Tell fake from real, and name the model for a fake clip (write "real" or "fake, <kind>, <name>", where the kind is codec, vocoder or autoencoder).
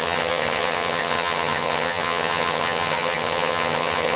fake, vocoder, HiFi-GAN